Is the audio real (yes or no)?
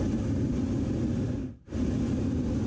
yes